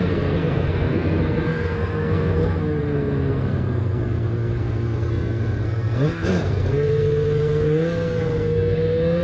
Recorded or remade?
remade